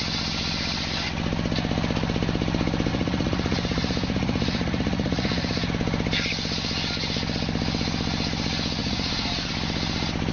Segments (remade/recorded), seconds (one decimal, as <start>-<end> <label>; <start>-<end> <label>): 0.0-2.9 recorded; 2.9-5.7 remade; 5.7-8.8 recorded; 8.8-9.5 remade; 9.5-10.3 recorded